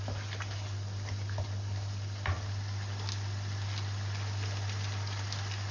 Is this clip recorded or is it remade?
recorded